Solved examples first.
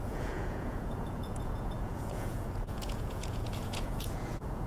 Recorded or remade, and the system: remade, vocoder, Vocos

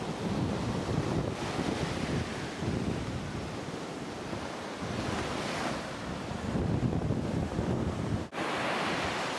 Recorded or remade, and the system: recorded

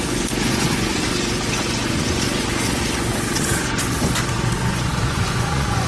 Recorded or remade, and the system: remade, vocoder, Vocos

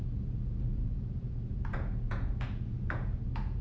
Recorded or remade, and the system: remade, vocoder, Vocos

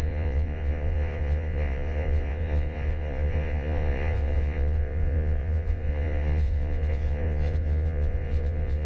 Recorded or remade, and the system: remade, vocoder, Vocos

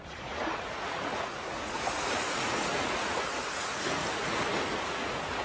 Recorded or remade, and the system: remade, vocoder, Vocos